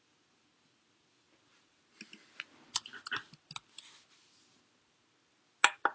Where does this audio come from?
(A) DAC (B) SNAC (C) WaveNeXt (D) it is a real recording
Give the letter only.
D